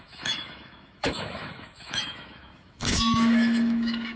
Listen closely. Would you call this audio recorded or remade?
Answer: remade